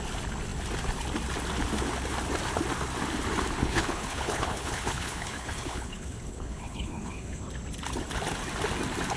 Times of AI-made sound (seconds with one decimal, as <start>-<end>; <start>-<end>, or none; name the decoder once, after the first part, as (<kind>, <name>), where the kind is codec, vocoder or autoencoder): 3.6-7.4 (codec, HILCodec)